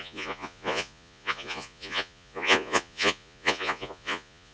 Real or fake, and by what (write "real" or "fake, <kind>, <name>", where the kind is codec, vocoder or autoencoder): fake, vocoder, Vocos